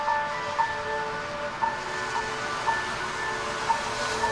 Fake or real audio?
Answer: real